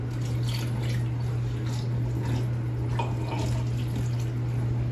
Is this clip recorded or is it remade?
recorded